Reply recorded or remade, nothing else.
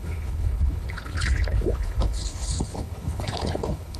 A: remade